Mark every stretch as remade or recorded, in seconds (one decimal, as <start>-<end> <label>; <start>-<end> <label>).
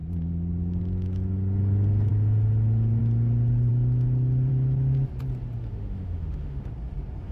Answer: 0.0-5.6 recorded; 5.6-6.7 remade; 6.7-7.3 recorded